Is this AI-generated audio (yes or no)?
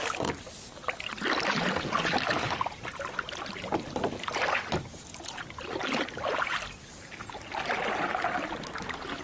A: no